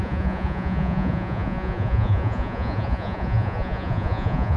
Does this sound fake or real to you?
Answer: fake